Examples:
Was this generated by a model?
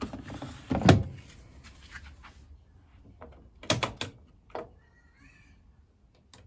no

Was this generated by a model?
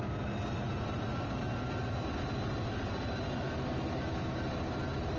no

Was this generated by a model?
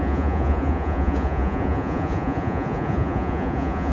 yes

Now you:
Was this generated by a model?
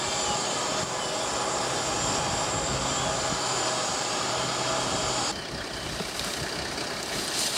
no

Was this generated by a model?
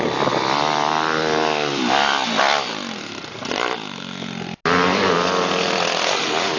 no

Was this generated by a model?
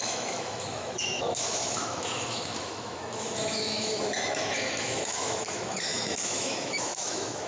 yes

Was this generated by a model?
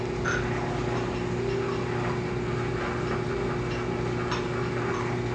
no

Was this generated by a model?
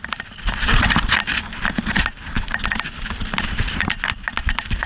no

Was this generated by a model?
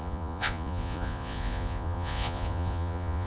yes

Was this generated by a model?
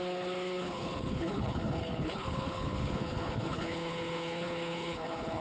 yes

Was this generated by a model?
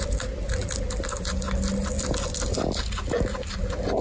no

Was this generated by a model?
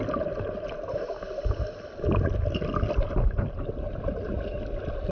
no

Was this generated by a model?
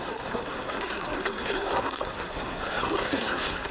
yes